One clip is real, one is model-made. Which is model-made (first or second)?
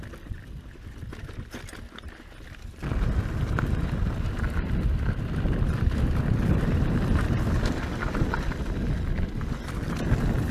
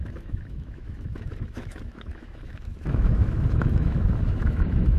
second